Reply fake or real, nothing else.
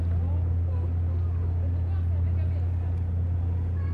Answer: real